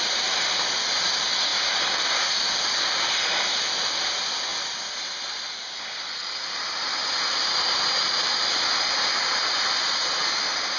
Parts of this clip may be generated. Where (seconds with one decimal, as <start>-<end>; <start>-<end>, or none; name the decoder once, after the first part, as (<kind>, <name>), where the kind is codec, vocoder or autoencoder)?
none